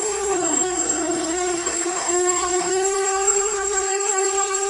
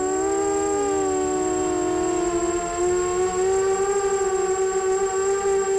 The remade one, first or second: first